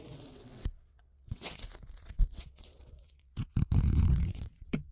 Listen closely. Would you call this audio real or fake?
fake